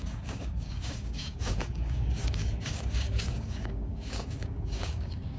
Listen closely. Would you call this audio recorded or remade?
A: remade